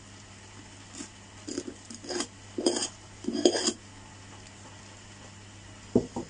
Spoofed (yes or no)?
no